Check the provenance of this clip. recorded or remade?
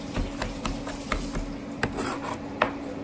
recorded